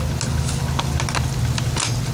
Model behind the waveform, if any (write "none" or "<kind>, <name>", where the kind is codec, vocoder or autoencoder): none